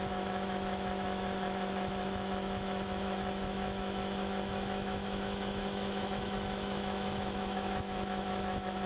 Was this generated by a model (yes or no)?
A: yes